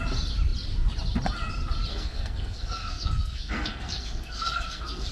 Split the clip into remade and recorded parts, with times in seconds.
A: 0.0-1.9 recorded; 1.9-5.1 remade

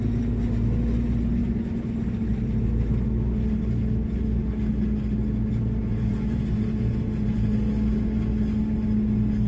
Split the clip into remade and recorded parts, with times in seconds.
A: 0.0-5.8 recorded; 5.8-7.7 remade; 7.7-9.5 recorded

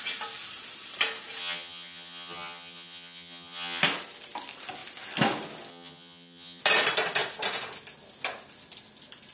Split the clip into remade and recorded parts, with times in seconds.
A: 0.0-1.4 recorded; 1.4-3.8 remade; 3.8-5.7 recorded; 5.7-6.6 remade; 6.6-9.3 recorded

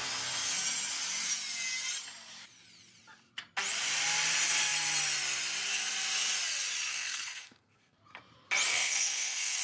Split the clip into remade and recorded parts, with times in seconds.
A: 0.0-6.9 recorded; 6.9-8.0 remade; 8.0-8.7 recorded; 8.7-9.6 remade